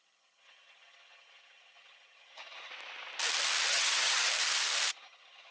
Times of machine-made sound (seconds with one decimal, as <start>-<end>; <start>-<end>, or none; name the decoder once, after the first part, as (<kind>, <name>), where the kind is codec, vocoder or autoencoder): 0.0-2.7 (vocoder, HiFi-GAN); 3.7-4.3; 4.9-5.5